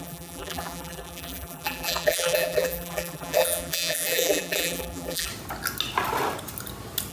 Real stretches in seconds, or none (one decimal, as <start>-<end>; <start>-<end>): 5.3-7.1